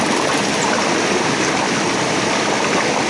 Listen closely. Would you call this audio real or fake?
real